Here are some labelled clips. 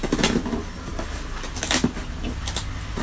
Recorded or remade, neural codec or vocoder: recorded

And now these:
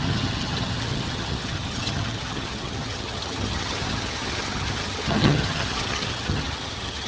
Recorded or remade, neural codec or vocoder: remade, vocoder, HiFi-GAN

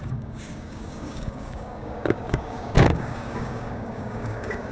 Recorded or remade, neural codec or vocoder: remade, codec, DAC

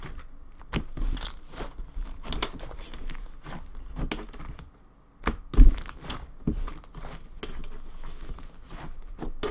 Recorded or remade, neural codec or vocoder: recorded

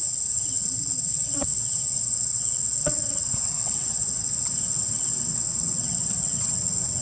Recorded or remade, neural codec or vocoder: remade, vocoder, WaveNeXt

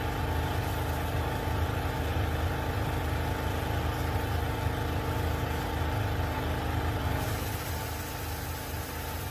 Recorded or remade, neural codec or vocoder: recorded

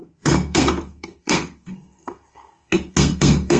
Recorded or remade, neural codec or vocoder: remade, codec, SNAC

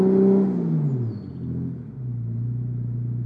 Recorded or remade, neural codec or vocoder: recorded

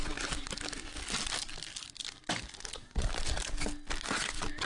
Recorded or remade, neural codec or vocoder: recorded